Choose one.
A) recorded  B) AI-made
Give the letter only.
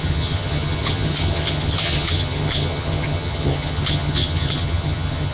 B